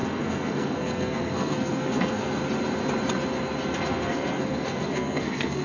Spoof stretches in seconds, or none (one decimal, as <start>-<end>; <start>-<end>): 0.0-2.4; 3.8-5.6